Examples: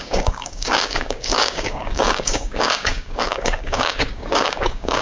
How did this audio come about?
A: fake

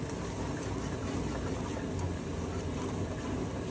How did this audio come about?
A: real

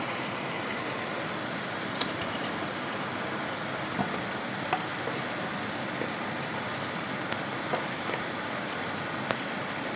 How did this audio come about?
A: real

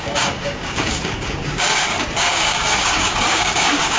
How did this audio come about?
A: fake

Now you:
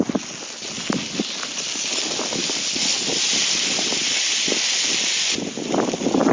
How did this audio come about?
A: real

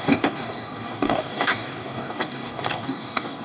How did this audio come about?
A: fake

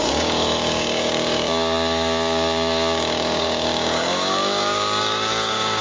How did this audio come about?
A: fake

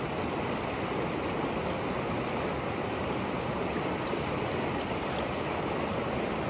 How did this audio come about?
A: real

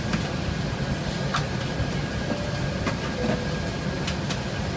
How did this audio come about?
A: real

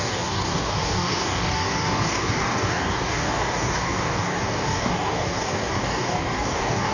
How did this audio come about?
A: fake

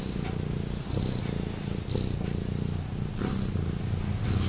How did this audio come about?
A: real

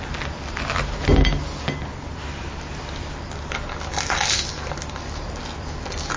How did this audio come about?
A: real